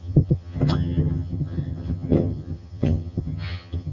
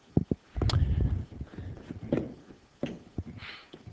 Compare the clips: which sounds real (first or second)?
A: second